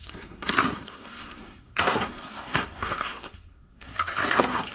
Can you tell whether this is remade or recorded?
remade